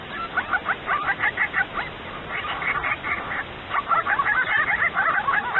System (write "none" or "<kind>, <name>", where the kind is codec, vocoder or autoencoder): none